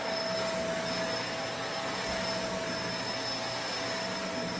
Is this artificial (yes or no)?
no